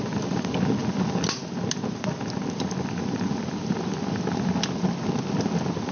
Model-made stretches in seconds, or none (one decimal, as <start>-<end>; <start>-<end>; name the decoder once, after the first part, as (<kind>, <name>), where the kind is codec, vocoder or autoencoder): none